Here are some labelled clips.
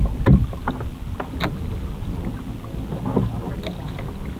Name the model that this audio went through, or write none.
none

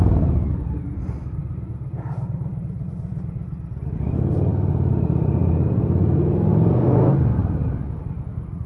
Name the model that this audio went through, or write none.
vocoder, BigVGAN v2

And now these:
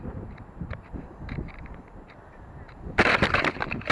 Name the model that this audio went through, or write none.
vocoder, BigVGAN v2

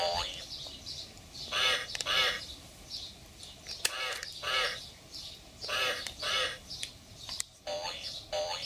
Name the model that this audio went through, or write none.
vocoder, BigVGAN v2